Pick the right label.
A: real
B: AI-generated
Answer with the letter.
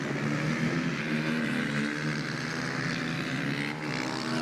A